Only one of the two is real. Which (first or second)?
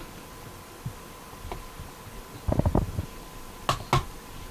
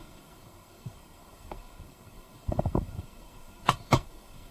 first